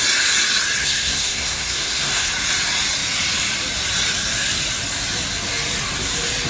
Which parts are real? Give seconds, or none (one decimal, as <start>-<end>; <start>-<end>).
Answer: 0.0-0.8; 2.3-6.5